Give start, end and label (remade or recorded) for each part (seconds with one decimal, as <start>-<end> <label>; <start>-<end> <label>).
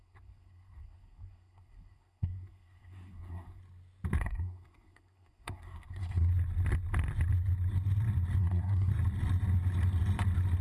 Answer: 0.0-3.6 remade; 3.6-4.2 recorded; 4.2-6.3 remade; 6.3-8.4 recorded; 8.4-8.9 remade; 8.9-10.6 recorded